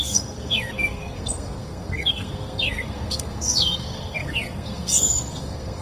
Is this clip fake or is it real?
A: fake